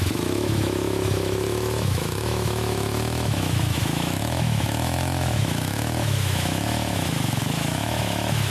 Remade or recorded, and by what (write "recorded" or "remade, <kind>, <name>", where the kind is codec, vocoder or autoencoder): remade, autoencoder, DAC-VAE